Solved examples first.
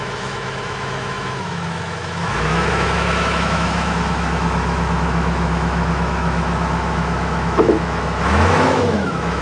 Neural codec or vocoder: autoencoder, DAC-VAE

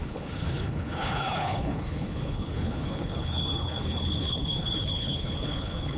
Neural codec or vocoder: codec, HILCodec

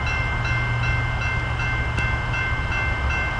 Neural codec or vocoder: none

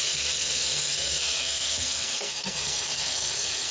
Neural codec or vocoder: codec, SNAC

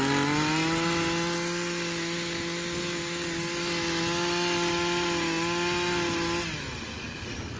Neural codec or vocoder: none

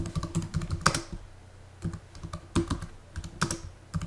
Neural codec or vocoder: none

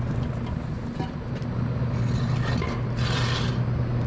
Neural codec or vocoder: none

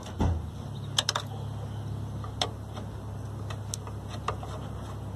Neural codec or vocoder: none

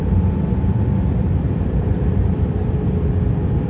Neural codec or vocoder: vocoder, BigVGAN v2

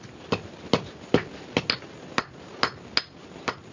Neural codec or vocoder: none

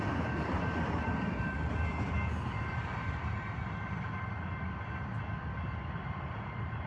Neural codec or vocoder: vocoder, BigVGAN v2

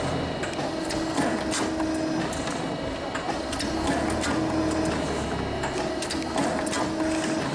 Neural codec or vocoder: none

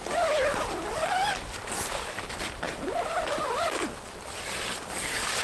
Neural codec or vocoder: none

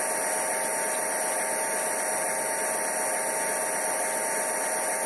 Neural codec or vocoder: none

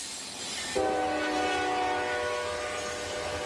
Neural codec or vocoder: none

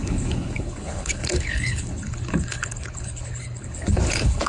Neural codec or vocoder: codec, HILCodec